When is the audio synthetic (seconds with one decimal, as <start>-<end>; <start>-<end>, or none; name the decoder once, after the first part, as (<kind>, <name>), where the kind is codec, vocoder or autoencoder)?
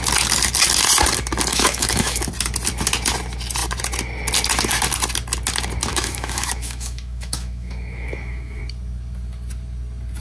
1.5-2.2 (autoencoder, DAC-VAE); 5.9-8.6